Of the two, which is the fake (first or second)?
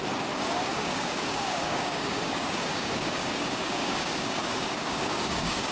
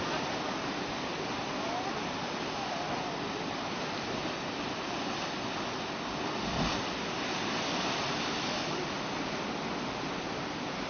first